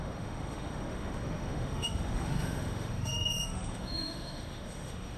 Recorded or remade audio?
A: remade